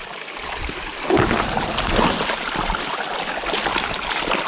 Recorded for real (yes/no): yes